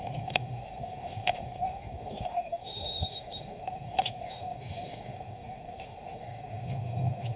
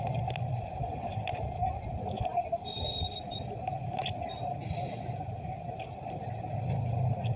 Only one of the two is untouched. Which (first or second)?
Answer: second